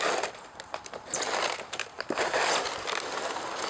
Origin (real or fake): real